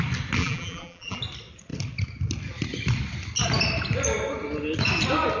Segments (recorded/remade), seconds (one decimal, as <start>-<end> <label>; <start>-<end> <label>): 0.0-0.4 recorded; 0.4-1.2 remade; 1.2-5.4 recorded

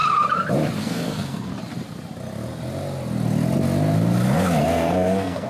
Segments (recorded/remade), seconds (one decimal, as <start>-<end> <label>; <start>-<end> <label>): 0.0-0.8 recorded; 0.8-1.5 remade; 1.5-4.6 recorded; 4.6-5.5 remade

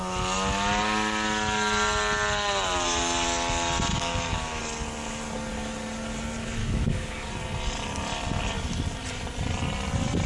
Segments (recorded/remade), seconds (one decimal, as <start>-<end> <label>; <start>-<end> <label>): 0.0-3.9 recorded; 3.9-4.6 remade; 4.6-6.6 recorded; 6.6-7.3 remade; 7.3-10.3 recorded

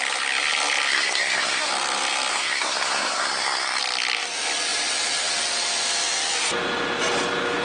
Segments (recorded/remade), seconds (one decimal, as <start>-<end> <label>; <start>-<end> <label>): 0.0-0.9 recorded; 0.9-1.7 remade; 1.7-2.3 recorded; 2.3-3.8 remade; 3.8-7.6 recorded

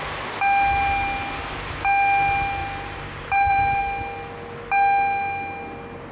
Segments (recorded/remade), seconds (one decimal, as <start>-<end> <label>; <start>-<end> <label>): 0.0-2.6 recorded; 2.6-3.8 remade; 3.8-6.1 recorded

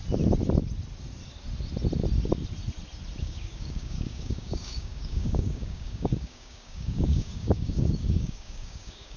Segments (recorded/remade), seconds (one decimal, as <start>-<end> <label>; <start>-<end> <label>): 0.0-3.2 recorded; 3.2-9.2 remade

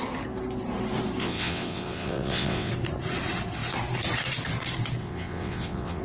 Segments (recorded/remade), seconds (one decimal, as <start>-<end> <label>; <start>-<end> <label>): 0.0-1.2 recorded; 1.2-2.7 remade; 2.7-5.0 recorded; 5.0-6.0 remade